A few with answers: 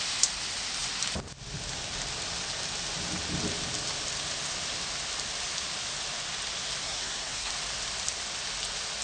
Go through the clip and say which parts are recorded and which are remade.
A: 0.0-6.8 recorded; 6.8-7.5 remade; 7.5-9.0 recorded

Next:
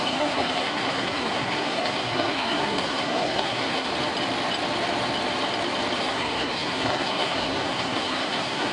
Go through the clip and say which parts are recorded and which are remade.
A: 0.0-3.9 remade; 3.9-6.0 recorded; 6.0-8.7 remade

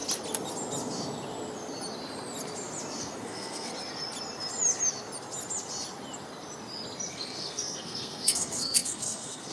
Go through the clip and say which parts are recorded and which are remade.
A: 0.0-3.0 recorded; 3.0-3.7 remade; 3.7-7.1 recorded; 7.1-9.5 remade

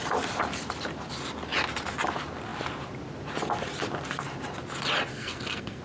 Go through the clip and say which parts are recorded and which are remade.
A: 0.0-5.1 recorded; 5.1-5.8 remade

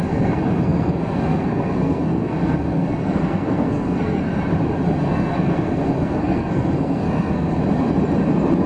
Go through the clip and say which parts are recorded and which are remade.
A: 0.0-4.2 remade; 4.2-5.0 recorded; 5.0-7.6 remade; 7.6-8.7 recorded

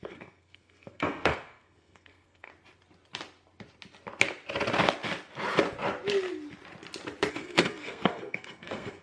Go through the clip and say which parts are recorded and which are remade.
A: 0.0-2.5 remade; 2.5-7.3 recorded; 7.3-9.0 remade

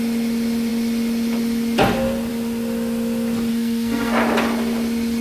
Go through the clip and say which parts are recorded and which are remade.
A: 0.0-3.5 recorded; 3.5-4.2 remade; 4.2-5.2 recorded